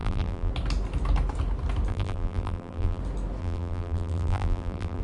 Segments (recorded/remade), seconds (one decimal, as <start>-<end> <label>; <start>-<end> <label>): 0.0-0.5 remade; 0.5-1.9 recorded; 1.9-3.0 remade; 3.0-3.4 recorded; 3.4-5.0 remade